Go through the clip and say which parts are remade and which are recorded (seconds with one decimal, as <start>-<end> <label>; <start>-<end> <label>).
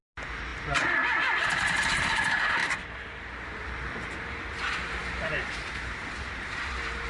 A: 0.0-5.0 recorded; 5.0-7.1 remade